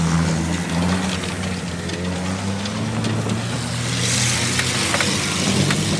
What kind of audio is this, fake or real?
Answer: real